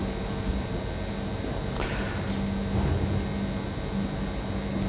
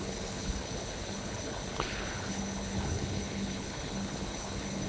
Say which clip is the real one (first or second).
first